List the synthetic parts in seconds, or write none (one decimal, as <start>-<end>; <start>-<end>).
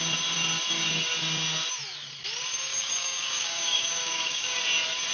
2.7-4.6